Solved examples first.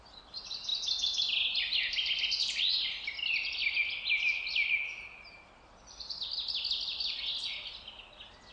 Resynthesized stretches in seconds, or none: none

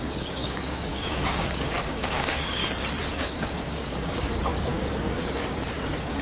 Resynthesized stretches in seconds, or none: 0.0-2.6 (codec, DAC); 3.1-6.2